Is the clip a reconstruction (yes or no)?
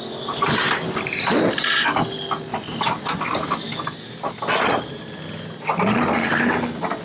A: no